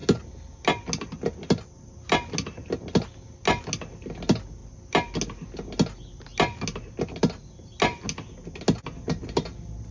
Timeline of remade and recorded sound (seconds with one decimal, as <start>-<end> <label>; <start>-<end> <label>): 0.0-9.9 recorded